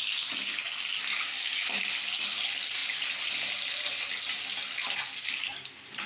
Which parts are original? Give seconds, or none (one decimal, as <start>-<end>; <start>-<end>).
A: 0.0-6.1